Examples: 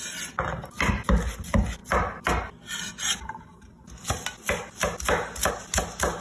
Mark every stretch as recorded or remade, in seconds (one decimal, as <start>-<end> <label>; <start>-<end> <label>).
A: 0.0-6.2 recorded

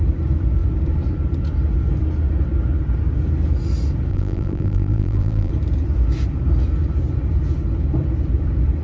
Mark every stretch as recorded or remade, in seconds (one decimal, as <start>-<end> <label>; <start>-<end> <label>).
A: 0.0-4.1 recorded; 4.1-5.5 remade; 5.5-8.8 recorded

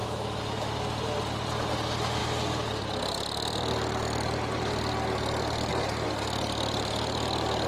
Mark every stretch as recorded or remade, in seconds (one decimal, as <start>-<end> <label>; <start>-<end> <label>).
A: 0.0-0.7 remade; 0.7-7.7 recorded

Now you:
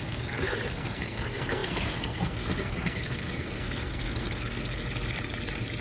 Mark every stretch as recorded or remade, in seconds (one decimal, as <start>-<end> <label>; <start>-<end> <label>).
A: 0.0-4.8 remade; 4.8-5.8 recorded